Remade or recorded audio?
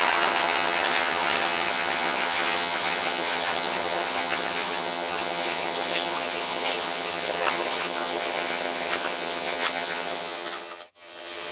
remade